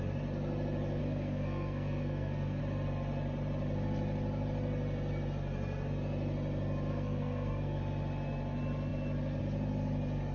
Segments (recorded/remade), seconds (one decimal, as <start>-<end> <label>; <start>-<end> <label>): 0.0-1.0 recorded; 1.0-2.6 remade; 2.6-6.9 recorded; 6.9-7.8 remade; 7.8-10.3 recorded